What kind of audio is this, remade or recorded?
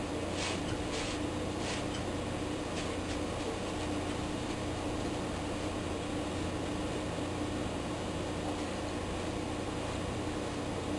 recorded